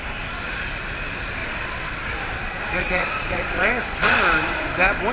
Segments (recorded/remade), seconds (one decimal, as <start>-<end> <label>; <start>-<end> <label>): 0.0-1.4 recorded; 1.4-1.9 remade; 1.9-2.3 recorded; 2.3-3.7 remade; 3.7-5.1 recorded